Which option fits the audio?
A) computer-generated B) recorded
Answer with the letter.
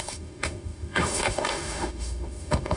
A